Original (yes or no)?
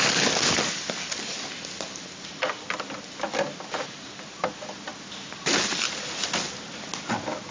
yes